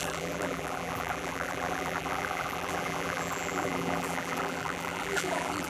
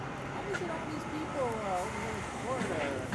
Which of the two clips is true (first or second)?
second